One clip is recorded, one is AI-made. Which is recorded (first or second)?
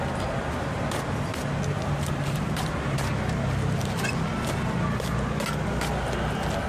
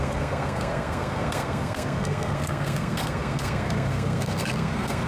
first